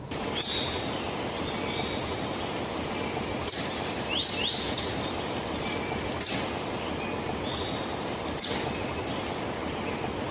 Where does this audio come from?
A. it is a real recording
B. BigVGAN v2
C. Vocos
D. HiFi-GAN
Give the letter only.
A